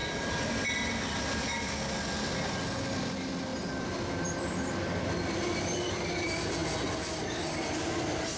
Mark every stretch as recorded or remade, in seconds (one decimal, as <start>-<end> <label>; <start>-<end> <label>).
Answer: 0.0-8.4 recorded